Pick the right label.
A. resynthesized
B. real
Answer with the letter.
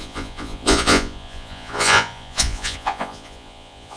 A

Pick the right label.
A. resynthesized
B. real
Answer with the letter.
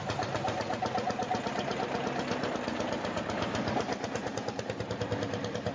B